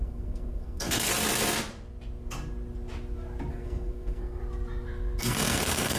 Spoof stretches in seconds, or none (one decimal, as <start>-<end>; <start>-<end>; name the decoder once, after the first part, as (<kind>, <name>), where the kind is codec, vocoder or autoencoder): 0.0-1.1 (codec, SNAC); 3.5-4.4; 5.2-6.0